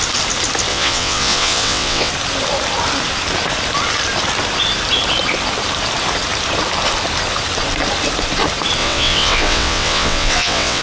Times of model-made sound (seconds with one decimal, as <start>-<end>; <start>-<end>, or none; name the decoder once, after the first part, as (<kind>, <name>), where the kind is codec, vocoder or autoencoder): 0.7-2.1 (vocoder, WaveNeXt); 8.8-10.8